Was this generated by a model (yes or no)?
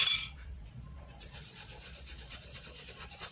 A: yes